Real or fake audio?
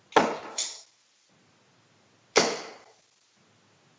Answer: real